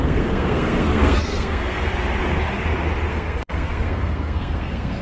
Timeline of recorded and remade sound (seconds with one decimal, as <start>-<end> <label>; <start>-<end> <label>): 0.0-1.9 remade; 1.9-3.1 recorded; 3.1-5.0 remade